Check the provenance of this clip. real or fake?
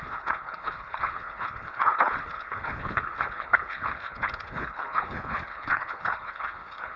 fake